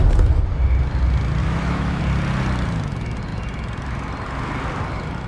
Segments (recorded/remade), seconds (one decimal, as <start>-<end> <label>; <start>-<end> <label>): 0.0-1.4 recorded; 1.4-2.0 remade; 2.0-5.3 recorded